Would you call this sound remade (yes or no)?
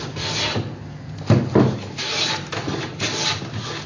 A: no